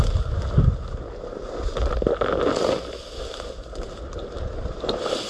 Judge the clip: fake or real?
real